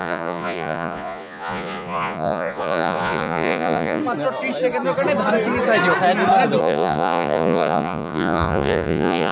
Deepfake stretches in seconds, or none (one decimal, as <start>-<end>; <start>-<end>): 0.0-4.0; 6.6-9.3